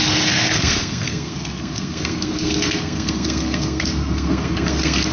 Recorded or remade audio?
remade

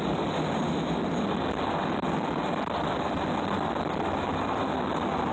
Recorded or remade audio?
recorded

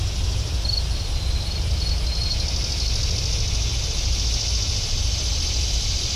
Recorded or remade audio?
recorded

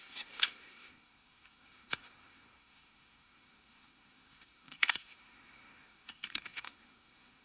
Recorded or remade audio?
remade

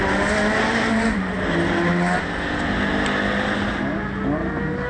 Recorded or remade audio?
recorded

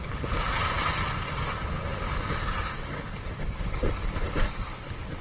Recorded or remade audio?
recorded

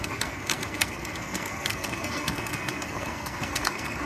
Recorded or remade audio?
remade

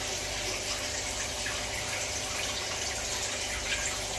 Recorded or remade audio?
recorded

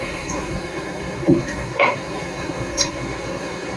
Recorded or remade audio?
remade